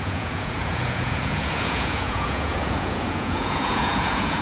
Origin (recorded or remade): remade